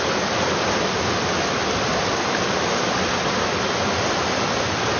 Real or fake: real